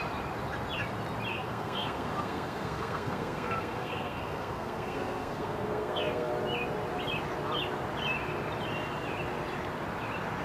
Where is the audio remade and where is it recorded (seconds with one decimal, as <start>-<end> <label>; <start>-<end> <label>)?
0.0-1.3 recorded; 1.3-6.3 remade; 6.3-10.4 recorded